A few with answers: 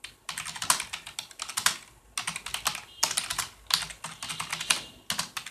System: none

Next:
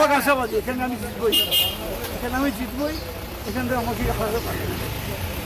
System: none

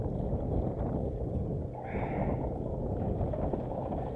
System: none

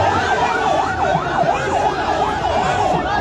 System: vocoder, BigVGAN v2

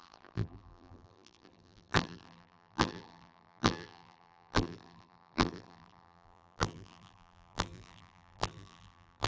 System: vocoder, BigVGAN v2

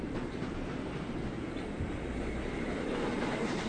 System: vocoder, BigVGAN v2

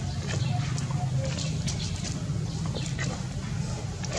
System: none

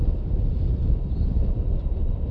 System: none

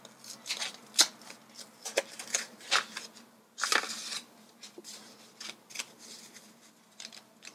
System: none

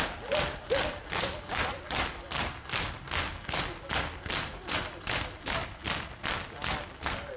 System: none